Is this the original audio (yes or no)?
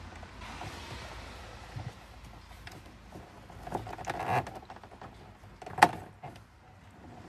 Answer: yes